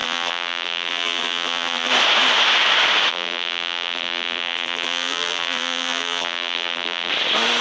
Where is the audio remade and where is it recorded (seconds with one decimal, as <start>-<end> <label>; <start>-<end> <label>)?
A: 0.0-1.9 remade; 1.9-3.1 recorded; 3.1-7.1 remade; 7.1-7.6 recorded

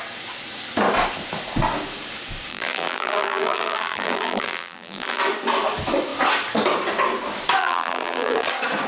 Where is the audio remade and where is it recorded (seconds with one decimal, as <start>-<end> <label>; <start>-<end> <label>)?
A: 0.0-2.5 recorded; 2.5-5.2 remade; 5.2-7.6 recorded; 7.6-8.5 remade; 8.5-8.9 recorded

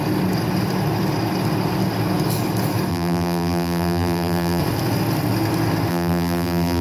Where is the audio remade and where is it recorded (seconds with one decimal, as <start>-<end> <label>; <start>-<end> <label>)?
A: 0.0-2.9 recorded; 2.9-4.6 remade; 4.6-5.9 recorded; 5.9-6.8 remade

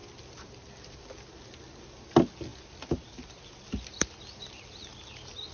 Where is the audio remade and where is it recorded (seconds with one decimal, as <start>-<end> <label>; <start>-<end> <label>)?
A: 0.0-5.5 recorded

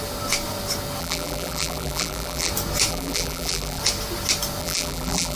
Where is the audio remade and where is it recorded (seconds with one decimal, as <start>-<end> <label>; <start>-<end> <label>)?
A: 0.0-1.0 recorded; 1.0-2.5 remade; 2.5-2.9 recorded; 2.9-3.8 remade; 3.8-4.6 recorded; 4.6-5.4 remade